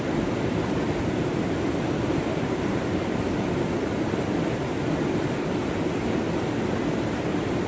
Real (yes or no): yes